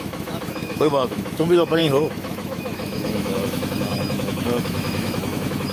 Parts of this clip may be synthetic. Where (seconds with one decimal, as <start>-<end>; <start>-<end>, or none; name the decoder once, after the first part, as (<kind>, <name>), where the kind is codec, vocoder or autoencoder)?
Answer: 0.0-5.7 (autoencoder, DAC-VAE)